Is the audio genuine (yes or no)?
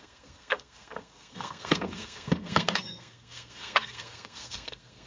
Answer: no